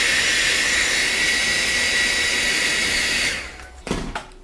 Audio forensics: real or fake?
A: real